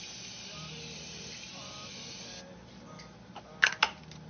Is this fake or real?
real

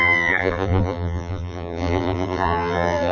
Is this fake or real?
fake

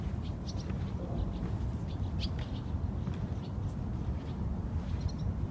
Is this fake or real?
real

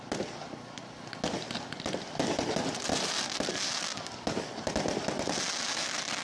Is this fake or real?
real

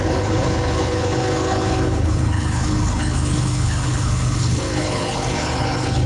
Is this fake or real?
fake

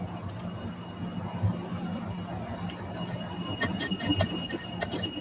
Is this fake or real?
real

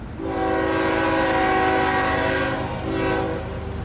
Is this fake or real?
real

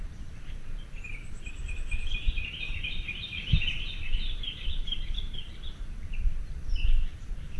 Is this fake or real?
fake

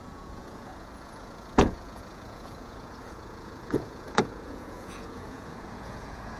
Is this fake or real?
fake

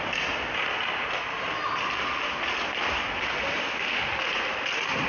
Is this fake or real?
real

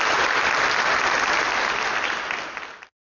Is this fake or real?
real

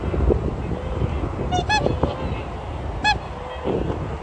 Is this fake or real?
real